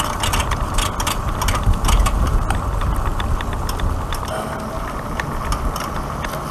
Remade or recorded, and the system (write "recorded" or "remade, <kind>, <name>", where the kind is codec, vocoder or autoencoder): recorded